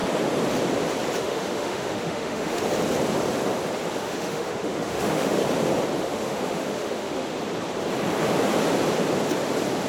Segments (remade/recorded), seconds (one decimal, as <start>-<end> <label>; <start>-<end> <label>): 0.0-1.2 recorded; 1.2-2.6 remade; 2.6-4.0 recorded; 4.0-5.4 remade; 5.4-6.0 recorded; 6.0-7.3 remade; 7.3-9.9 recorded